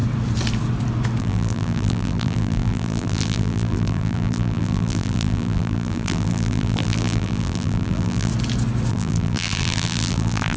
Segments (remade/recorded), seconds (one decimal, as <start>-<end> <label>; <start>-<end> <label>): 0.0-1.2 recorded; 1.2-8.3 remade; 8.3-8.9 recorded; 8.9-10.6 remade